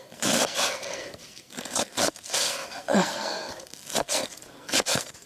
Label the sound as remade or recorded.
remade